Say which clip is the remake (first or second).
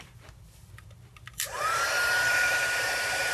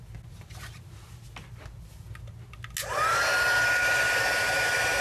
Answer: first